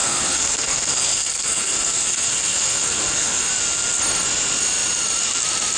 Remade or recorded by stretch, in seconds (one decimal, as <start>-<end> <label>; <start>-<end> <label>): 0.0-3.5 remade; 3.5-5.8 recorded